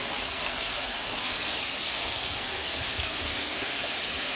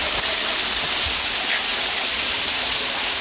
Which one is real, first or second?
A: second